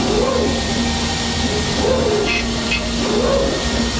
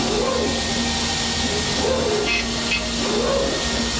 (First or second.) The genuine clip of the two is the second